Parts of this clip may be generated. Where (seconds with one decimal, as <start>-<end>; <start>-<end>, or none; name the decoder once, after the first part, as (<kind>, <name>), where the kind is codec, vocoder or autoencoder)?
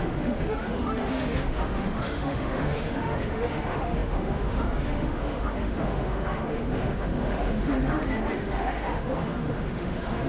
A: 0.0-10.3 (autoencoder, DAC-VAE)